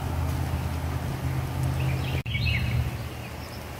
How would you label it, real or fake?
real